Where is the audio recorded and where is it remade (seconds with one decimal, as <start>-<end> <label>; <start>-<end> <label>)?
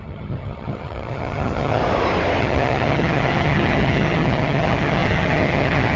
0.0-1.8 remade; 1.8-2.4 recorded; 2.4-6.0 remade